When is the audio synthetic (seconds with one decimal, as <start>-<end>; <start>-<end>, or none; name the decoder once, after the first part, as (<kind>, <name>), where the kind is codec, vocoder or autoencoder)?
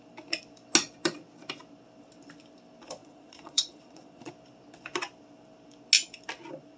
3.0-4.3 (vocoder, Vocos)